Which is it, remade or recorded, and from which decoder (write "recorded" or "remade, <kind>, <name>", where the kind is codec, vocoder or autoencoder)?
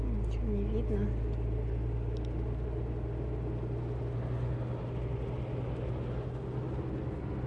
recorded